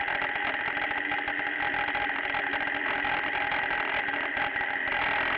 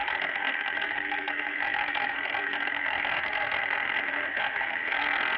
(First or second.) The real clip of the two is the first